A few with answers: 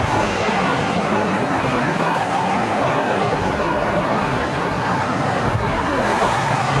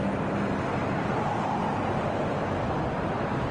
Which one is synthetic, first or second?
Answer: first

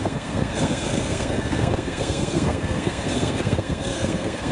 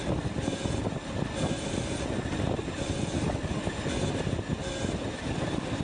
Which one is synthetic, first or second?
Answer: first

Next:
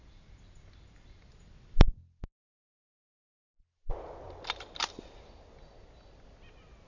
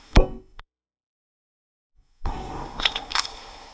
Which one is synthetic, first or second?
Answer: second